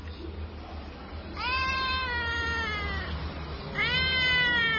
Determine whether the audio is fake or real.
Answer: real